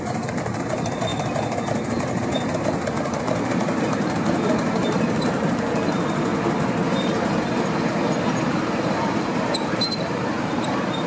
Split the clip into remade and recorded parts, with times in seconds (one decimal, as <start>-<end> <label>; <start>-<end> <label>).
0.0-1.1 remade; 1.1-3.2 recorded; 3.2-6.3 remade; 6.3-8.4 recorded; 8.4-11.1 remade